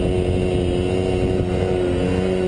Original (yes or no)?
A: yes